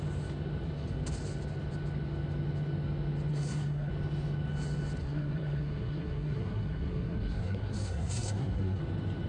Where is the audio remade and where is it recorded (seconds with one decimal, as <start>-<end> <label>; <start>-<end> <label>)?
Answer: 0.0-3.3 recorded; 3.3-3.9 remade; 3.9-5.0 recorded; 5.0-8.8 remade; 8.8-9.3 recorded

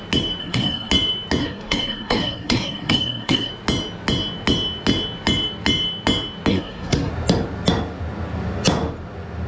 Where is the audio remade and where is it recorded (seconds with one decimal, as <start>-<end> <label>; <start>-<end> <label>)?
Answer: 0.0-0.4 recorded; 0.4-0.9 remade; 0.9-1.4 recorded; 1.4-3.5 remade; 3.5-6.5 recorded; 6.5-7.1 remade; 7.1-9.5 recorded